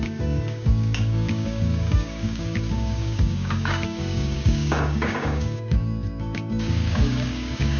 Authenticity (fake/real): fake